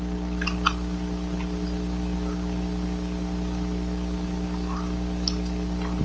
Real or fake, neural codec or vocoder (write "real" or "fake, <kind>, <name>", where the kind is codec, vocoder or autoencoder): real